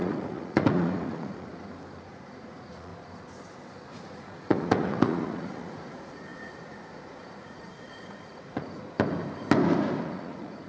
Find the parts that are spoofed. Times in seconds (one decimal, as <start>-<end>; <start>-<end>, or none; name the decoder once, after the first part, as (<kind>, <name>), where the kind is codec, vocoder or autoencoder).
0.0-1.5 (vocoder, Vocos); 2.1-2.9; 3.9-8.8; 10.0-10.7